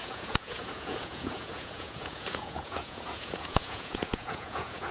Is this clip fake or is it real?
fake